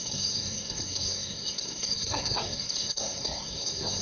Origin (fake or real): fake